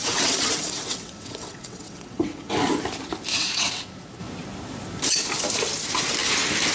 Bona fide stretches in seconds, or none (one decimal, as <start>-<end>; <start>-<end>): 2.6-3.3; 3.8-6.7